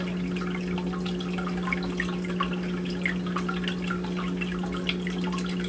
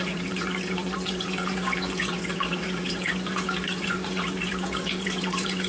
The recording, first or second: first